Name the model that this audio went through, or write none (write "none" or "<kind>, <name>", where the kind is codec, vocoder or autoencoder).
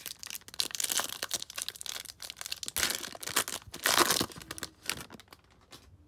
none